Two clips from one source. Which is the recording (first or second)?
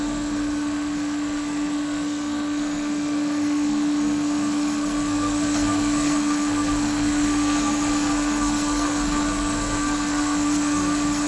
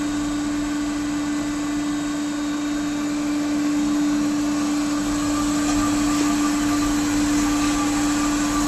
second